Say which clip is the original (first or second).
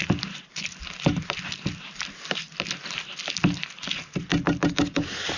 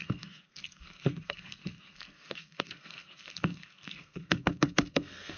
first